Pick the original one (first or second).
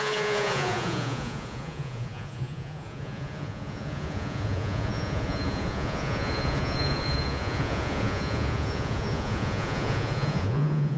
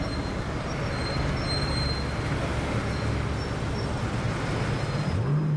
second